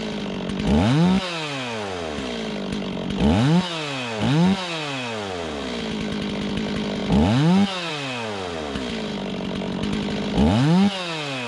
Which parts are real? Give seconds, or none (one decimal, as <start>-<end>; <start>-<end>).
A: 0.0-11.5